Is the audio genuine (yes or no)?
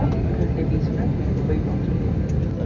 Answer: yes